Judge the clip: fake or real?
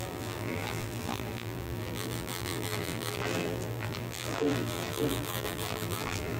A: fake